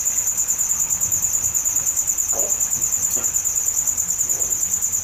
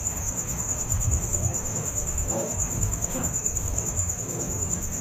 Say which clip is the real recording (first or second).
first